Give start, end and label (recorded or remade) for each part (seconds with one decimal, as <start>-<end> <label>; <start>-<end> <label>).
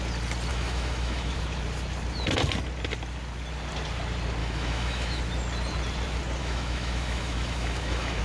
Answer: 0.0-0.5 recorded; 0.5-1.4 remade; 1.4-4.4 recorded; 4.4-5.2 remade; 5.2-6.4 recorded; 6.4-8.2 remade